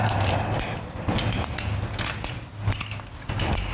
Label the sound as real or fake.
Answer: real